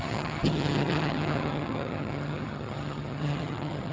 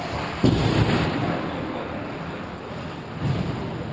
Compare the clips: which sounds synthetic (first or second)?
first